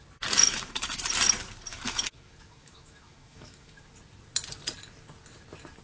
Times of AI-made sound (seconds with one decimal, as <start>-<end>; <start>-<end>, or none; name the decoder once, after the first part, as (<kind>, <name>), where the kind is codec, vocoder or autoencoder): 0.4-1.0 (autoencoder, DAC-VAE); 1.7-3.9